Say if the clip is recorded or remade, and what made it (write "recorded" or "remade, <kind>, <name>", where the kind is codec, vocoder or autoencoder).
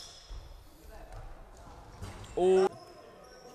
recorded